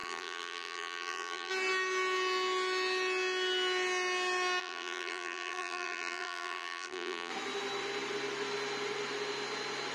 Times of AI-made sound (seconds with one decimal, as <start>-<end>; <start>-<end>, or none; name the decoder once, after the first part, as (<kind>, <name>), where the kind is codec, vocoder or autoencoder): 0.0-1.5 (vocoder, BigVGAN v2); 4.6-7.3